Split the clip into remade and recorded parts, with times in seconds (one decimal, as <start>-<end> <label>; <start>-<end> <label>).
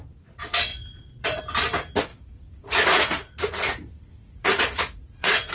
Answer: 0.0-0.7 recorded; 0.7-1.4 remade; 1.4-2.1 recorded; 2.1-5.5 remade